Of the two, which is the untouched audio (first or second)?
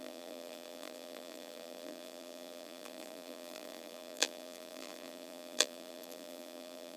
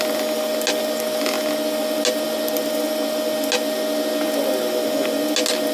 second